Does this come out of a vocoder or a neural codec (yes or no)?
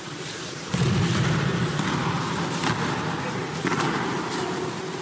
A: no